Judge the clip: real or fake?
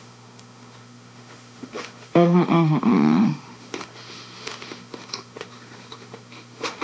fake